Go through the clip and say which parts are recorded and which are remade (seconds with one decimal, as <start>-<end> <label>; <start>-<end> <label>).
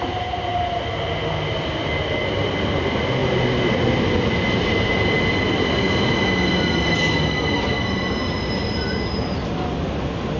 0.0-10.4 recorded